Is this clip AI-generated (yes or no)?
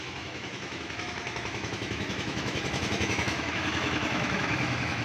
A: yes